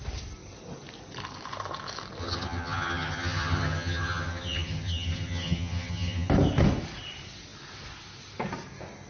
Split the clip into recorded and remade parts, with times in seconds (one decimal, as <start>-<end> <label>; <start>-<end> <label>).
0.0-2.2 recorded; 2.2-6.3 remade; 6.3-9.1 recorded